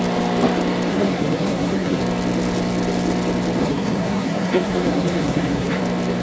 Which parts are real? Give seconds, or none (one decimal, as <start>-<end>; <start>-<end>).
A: 0.0-0.9; 2.0-3.6; 5.8-6.2